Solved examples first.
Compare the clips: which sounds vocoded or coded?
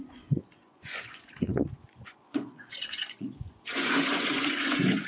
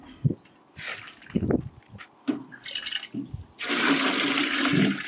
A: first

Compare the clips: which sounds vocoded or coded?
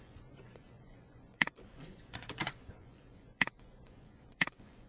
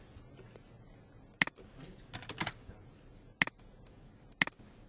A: first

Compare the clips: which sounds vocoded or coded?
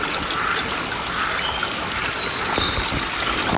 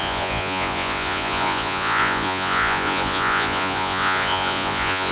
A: second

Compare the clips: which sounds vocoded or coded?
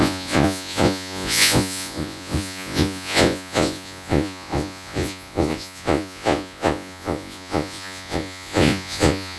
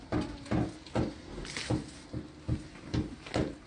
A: first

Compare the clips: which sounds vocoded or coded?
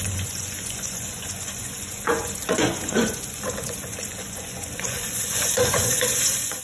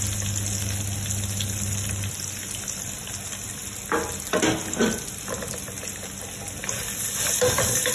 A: first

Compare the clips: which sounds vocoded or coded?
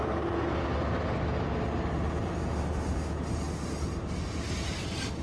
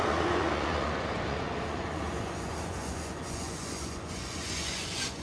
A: second